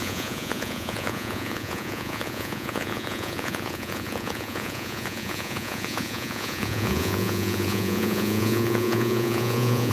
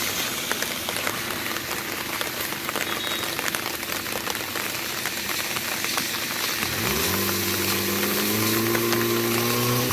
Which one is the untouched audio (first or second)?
second